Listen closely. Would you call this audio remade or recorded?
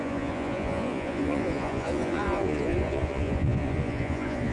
remade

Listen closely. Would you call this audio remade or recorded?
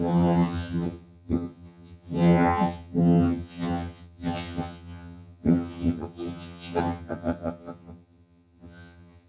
remade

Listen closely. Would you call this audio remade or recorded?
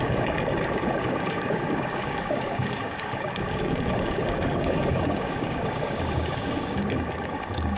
remade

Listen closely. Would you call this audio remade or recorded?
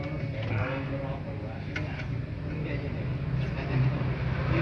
recorded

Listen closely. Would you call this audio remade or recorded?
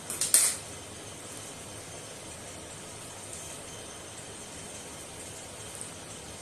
recorded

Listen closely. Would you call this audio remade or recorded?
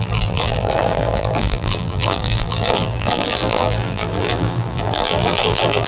remade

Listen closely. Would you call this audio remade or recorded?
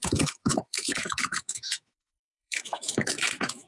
remade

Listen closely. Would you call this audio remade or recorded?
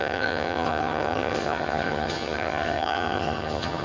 remade